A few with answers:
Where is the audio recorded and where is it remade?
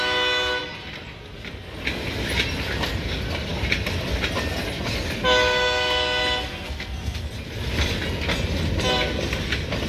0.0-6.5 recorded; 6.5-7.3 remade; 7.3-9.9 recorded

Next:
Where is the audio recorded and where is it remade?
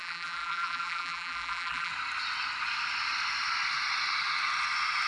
0.0-1.9 remade; 1.9-5.1 recorded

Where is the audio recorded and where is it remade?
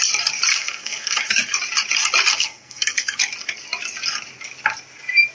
0.0-0.5 recorded; 0.5-1.2 remade; 1.2-2.3 recorded; 2.3-3.2 remade; 3.2-5.3 recorded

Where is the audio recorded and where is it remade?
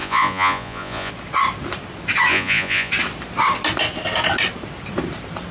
0.0-1.1 remade; 1.1-2.3 recorded; 2.3-2.9 remade; 2.9-5.5 recorded